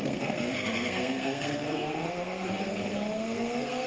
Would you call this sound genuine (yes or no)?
no